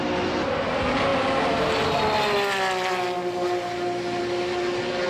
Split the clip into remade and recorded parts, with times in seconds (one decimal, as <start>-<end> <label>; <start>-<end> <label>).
0.0-5.1 recorded